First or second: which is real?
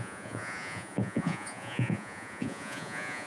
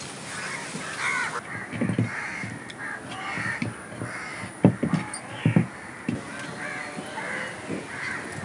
second